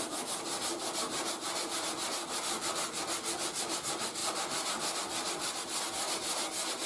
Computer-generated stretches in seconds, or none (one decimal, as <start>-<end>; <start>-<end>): none